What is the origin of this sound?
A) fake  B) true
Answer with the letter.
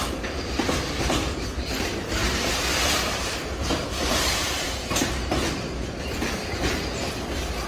B